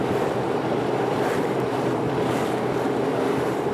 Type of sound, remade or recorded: remade